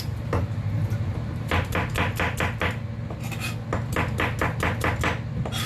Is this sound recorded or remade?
recorded